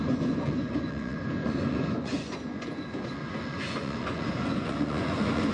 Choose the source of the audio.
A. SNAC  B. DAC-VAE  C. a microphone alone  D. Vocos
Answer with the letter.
D